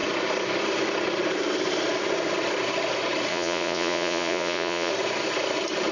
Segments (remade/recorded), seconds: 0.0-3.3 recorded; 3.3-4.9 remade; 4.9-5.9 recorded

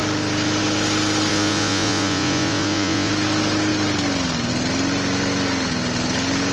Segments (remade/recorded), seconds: 0.0-1.3 recorded; 1.3-3.1 remade; 3.1-6.5 recorded

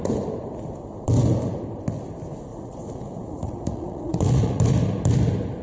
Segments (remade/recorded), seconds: 0.0-2.5 recorded; 2.5-4.6 remade; 4.6-5.6 recorded

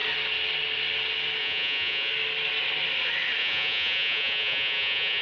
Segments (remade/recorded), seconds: 0.0-1.4 recorded; 1.4-2.1 remade; 2.1-3.4 recorded; 3.4-5.2 remade

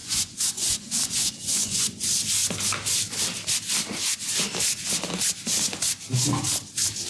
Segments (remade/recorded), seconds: 0.0-2.0 remade; 2.0-7.1 recorded

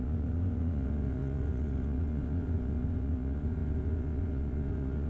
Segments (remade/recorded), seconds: 0.0-5.1 remade

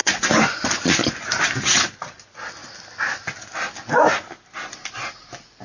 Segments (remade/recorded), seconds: 0.0-1.3 remade; 1.3-5.6 recorded